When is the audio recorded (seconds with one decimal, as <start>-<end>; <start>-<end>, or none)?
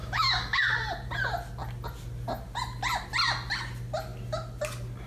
0.6-5.1